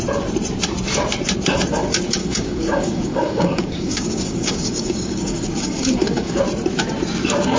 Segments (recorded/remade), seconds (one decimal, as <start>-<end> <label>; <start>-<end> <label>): 0.0-2.2 recorded; 2.2-6.4 remade; 6.4-7.6 recorded